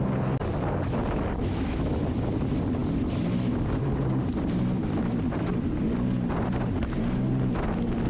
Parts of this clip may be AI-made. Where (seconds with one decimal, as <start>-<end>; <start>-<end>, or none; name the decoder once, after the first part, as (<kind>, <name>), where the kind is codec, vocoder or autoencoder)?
1.4-2.0 (autoencoder, DAC-VAE)